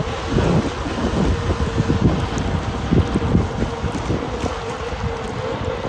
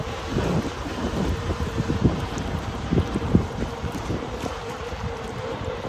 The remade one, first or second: second